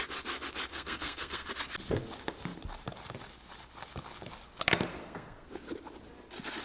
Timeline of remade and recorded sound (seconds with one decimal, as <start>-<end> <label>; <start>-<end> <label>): 0.0-0.7 recorded; 0.7-1.5 remade; 1.5-4.9 recorded; 4.9-5.5 remade; 5.5-6.6 recorded